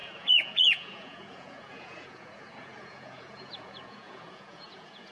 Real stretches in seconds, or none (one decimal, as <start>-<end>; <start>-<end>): none